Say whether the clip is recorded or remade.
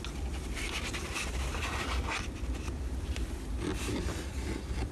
recorded